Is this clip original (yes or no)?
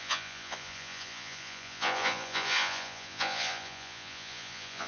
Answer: no